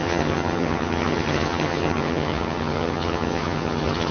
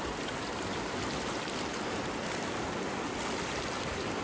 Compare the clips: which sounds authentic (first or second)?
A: second